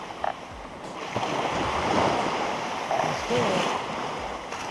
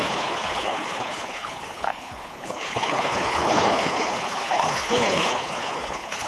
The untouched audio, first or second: first